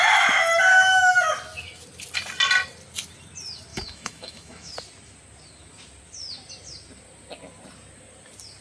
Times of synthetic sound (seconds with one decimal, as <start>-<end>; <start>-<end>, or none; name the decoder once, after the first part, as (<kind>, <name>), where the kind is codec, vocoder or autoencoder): 0.7-1.3 (autoencoder, DAC-VAE); 3.7-4.7

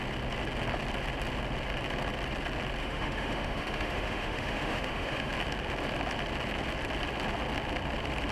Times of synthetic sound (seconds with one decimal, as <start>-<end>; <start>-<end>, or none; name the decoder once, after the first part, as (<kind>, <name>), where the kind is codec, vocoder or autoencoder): 2.8-5.3 (autoencoder, DAC-VAE)

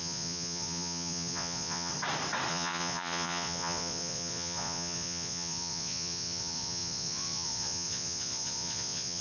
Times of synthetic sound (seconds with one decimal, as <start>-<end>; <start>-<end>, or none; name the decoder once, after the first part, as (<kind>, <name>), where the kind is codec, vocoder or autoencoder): 0.0-1.9 (vocoder, Vocos); 2.5-9.2

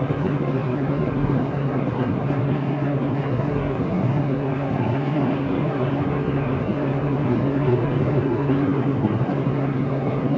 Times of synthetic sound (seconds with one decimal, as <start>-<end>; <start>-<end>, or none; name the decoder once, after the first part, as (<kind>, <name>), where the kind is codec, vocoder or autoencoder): 0.0-10.4 (codec, SNAC)

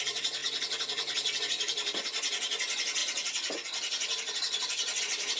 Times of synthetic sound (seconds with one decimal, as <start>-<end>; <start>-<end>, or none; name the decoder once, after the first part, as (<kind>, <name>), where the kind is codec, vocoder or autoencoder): none